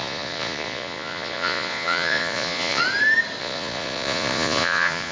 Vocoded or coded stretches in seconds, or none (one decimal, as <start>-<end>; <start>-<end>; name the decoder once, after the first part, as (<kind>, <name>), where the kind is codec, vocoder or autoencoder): 0.0-2.8 (vocoder, Vocos); 3.4-5.1